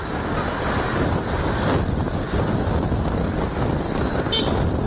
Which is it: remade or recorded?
recorded